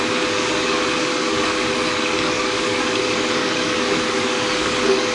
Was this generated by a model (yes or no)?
yes